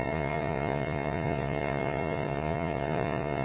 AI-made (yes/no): yes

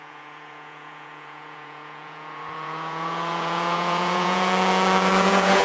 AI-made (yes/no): yes